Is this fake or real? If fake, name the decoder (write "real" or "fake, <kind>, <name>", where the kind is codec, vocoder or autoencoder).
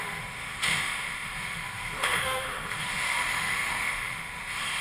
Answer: fake, autoencoder, DAC-VAE